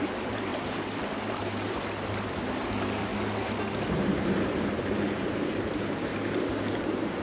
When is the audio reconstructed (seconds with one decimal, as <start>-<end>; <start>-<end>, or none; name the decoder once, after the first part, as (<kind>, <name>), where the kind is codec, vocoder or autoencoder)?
0.0-3.1 (vocoder, BigVGAN v2); 4.0-6.1; 6.7-7.2